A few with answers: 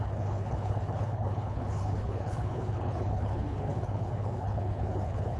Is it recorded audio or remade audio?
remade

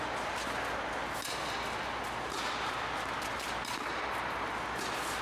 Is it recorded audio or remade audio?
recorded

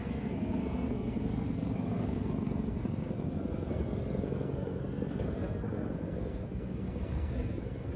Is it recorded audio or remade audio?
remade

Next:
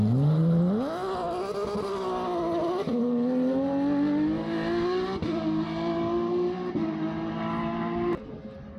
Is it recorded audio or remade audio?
recorded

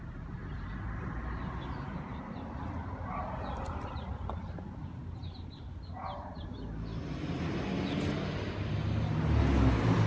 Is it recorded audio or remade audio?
recorded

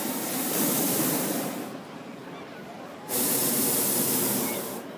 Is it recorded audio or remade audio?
remade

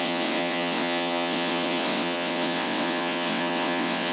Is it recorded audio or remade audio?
remade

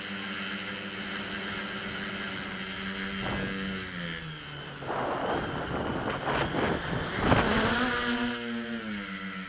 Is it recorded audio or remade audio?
recorded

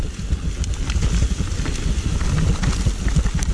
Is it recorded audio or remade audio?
recorded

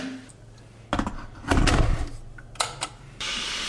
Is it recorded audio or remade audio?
recorded